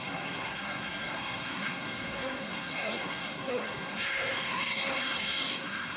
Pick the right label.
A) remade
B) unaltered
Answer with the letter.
A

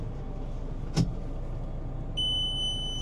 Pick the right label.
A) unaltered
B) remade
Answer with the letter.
A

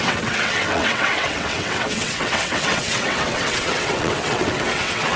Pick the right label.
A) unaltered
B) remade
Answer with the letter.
B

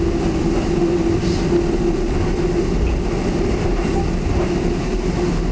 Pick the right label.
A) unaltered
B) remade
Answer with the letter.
A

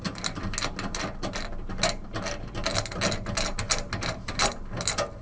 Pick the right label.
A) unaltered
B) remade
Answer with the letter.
A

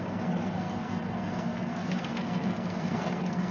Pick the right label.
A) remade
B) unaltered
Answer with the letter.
A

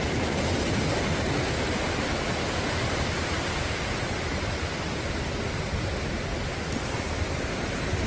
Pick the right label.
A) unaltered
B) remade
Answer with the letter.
A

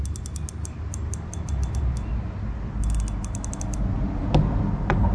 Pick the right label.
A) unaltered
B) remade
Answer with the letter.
A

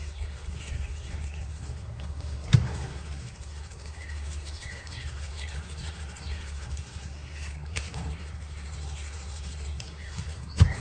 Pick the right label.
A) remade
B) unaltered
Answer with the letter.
A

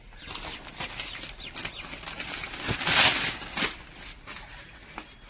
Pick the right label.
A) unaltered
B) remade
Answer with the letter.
A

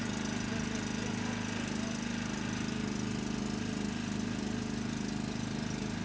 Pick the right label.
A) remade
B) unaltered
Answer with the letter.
B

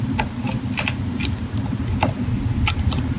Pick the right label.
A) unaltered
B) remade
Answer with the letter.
A